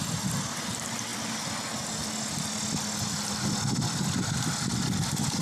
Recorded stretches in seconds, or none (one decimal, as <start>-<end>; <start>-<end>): 0.0-5.4